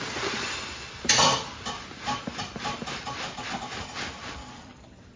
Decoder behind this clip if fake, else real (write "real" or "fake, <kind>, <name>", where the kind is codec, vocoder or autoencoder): real